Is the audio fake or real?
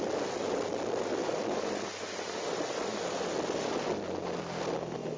real